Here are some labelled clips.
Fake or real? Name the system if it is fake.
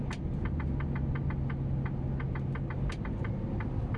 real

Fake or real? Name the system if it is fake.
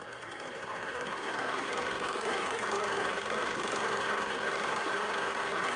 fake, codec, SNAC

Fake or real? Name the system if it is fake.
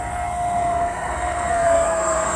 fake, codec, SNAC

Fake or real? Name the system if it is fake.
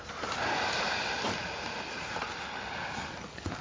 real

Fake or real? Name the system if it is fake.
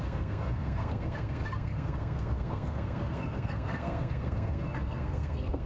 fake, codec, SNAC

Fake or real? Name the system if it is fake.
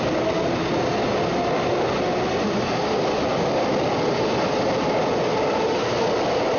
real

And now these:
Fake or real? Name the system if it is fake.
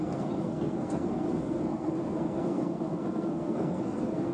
fake, codec, SNAC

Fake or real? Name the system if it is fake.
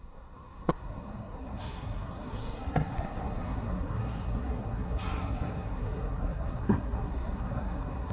fake, codec, SNAC